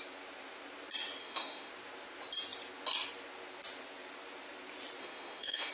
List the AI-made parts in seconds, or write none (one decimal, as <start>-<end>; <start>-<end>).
1.2-1.7; 5.0-5.7